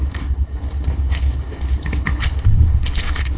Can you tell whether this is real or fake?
fake